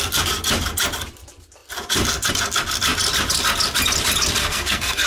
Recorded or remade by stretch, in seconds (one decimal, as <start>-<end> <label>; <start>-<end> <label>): 0.0-4.4 recorded; 4.4-5.1 remade